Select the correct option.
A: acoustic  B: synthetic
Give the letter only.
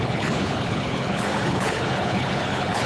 B